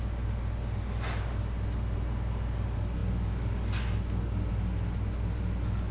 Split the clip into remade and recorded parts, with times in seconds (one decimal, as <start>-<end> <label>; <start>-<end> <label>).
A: 0.0-5.9 recorded